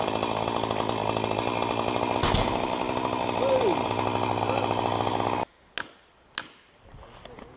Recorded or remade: recorded